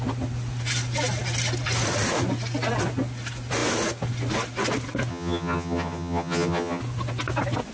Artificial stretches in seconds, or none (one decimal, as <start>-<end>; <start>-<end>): 5.1-6.8